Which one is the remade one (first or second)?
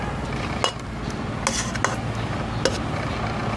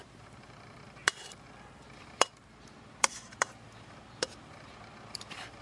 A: second